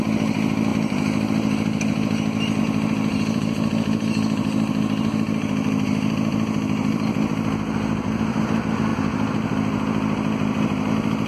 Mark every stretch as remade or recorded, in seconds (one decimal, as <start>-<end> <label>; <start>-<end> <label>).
0.0-11.3 recorded